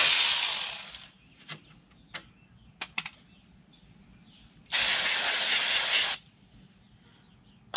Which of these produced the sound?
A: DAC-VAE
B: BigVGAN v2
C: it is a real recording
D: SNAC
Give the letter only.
C